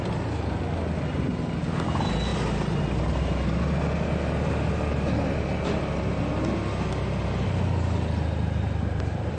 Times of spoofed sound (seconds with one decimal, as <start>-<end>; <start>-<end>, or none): none

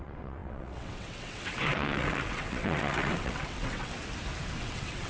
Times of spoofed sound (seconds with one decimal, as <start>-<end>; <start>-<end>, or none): 0.0-3.9; 4.6-5.1

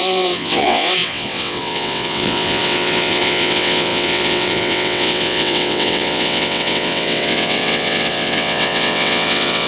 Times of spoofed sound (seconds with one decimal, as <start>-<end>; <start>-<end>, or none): 0.0-9.7

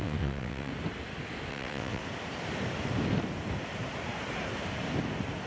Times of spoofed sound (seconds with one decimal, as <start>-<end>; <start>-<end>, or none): 0.0-0.7; 1.5-2.0

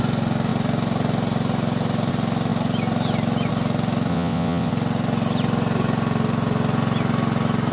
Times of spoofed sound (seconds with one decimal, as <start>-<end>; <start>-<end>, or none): 4.1-4.7